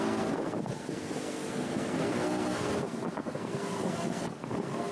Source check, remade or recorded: remade